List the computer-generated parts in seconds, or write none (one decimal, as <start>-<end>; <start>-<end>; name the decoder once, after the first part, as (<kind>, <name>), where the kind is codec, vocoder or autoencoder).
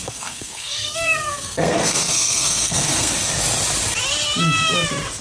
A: 0.0-3.1 (codec, SNAC)